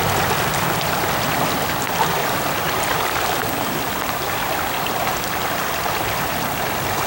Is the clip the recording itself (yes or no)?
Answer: yes